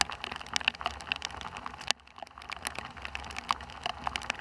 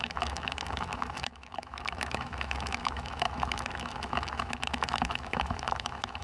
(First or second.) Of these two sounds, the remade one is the second